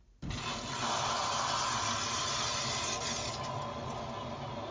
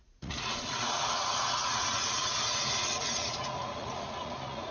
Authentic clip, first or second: first